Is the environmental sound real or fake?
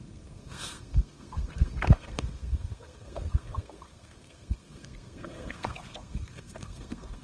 fake